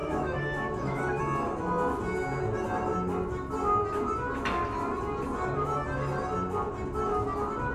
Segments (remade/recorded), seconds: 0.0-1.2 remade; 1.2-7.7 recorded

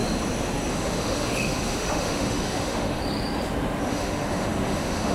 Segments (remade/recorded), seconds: 0.0-0.7 recorded; 0.7-3.0 remade; 3.0-3.9 recorded; 3.9-5.1 remade

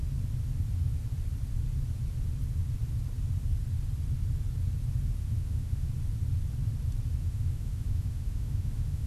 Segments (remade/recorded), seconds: 0.0-5.2 recorded; 5.2-5.9 remade; 5.9-7.2 recorded; 7.2-9.1 remade

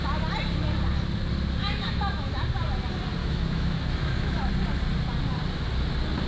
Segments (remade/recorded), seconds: 0.0-1.6 recorded; 1.6-2.3 remade; 2.3-3.2 recorded; 3.2-4.5 remade; 4.5-6.3 recorded

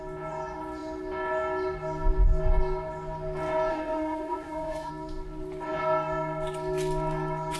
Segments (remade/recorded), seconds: 0.0-3.7 recorded; 3.7-4.9 remade; 4.9-7.6 recorded

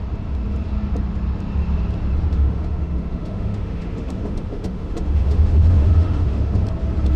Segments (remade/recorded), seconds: 0.0-2.3 recorded; 2.3-6.6 remade; 6.6-7.2 recorded